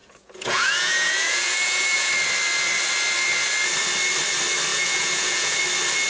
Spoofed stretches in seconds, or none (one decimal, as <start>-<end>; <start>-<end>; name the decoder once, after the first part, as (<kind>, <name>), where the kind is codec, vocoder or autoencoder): 0.0-2.1 (vocoder, Vocos); 4.7-5.6